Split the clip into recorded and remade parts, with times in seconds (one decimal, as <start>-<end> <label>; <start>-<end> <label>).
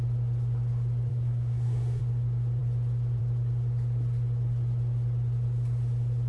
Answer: 0.0-1.1 recorded; 1.1-2.0 remade; 2.0-6.3 recorded